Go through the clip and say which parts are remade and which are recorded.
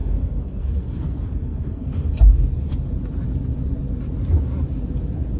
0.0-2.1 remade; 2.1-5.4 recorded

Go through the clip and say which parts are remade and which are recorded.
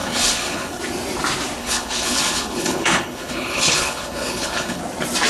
0.0-0.8 remade; 0.8-1.6 recorded; 1.6-4.8 remade; 4.8-5.3 recorded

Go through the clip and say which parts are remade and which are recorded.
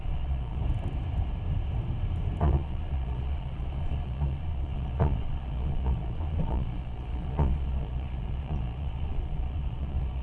0.0-0.6 remade; 0.6-2.4 recorded; 2.4-10.2 remade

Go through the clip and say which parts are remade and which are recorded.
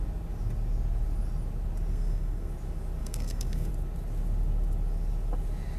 0.0-1.9 recorded; 1.9-2.5 remade; 2.5-3.0 recorded; 3.0-3.7 remade; 3.7-5.8 recorded